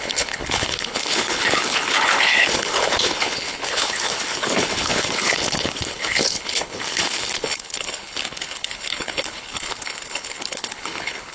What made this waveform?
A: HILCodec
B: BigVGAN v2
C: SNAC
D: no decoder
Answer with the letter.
A